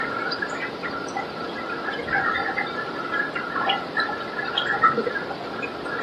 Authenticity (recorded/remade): recorded